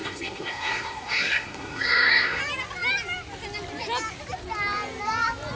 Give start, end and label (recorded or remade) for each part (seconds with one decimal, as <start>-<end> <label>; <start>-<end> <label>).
0.0-2.4 remade; 2.4-5.6 recorded